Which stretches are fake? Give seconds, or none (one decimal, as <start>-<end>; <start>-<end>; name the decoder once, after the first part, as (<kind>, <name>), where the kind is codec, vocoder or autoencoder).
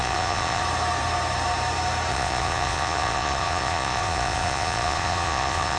0.0-0.6 (vocoder, Vocos); 2.1-5.8